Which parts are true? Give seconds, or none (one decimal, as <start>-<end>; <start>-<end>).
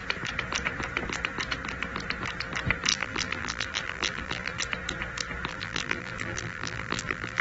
0.0-2.9; 4.6-5.5